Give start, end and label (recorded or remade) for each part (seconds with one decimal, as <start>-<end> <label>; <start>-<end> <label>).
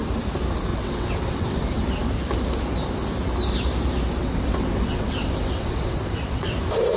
0.0-0.7 recorded; 0.7-1.6 remade; 1.6-4.2 recorded; 4.2-6.6 remade; 6.6-7.0 recorded